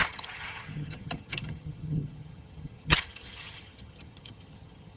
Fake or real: fake